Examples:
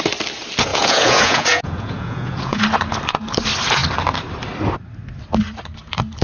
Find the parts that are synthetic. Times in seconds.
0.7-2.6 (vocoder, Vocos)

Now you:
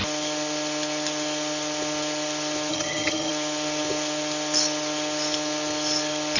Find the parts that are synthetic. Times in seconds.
2.7-3.3 (vocoder, HiFi-GAN)

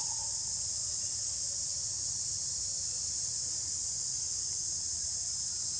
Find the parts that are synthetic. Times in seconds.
0.0-5.8 (vocoder, BigVGAN v2)

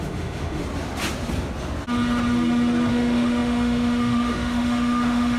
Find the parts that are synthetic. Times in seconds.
0.0-0.6 (autoencoder, DAC-VAE); 2.9-5.4

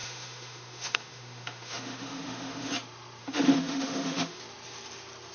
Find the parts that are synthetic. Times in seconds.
0.0-2.7 (autoencoder, DAC-VAE); 3.2-4.4